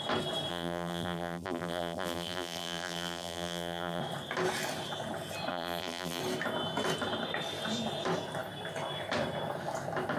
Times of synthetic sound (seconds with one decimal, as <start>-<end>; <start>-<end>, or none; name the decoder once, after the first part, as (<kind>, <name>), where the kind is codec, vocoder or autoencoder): 0.5-4.0 (vocoder, BigVGAN v2); 5.5-6.2